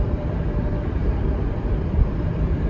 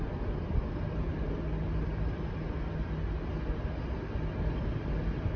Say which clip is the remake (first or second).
first